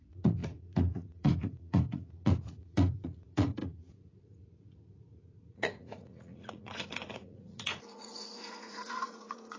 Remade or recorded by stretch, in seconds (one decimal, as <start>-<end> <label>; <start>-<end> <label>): 0.0-9.6 remade